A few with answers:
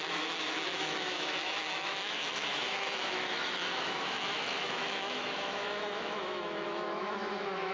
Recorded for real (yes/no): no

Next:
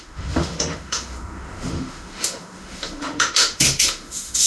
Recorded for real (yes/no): no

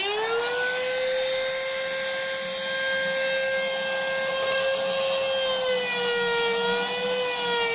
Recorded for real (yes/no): yes